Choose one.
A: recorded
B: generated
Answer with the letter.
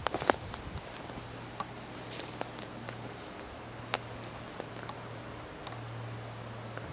A